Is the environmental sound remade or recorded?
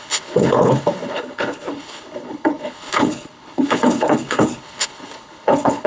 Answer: remade